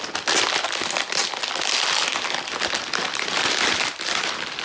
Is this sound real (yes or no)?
no